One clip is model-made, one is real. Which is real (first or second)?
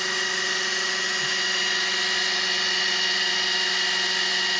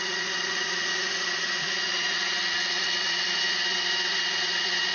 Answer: first